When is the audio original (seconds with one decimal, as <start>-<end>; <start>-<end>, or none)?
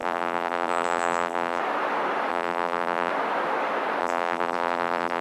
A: 1.6-2.3; 3.1-4.0